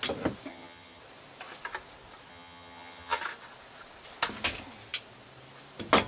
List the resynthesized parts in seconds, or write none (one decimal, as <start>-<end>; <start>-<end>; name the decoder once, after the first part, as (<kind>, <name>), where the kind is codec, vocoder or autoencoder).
0.5-1.0 (vocoder, HiFi-GAN); 2.3-3.2